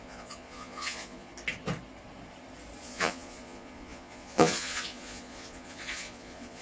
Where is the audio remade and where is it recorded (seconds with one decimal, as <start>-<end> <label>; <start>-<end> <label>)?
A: 0.0-1.3 remade; 1.3-2.8 recorded; 2.8-6.6 remade